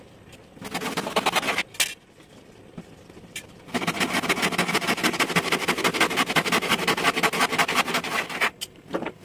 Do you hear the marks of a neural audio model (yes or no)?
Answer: no